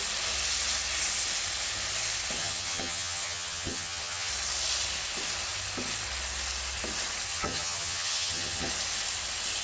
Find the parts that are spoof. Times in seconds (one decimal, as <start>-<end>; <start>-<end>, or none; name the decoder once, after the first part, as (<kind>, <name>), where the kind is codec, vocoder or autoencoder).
2.4-4.3 (vocoder, HiFi-GAN); 7.3-8.7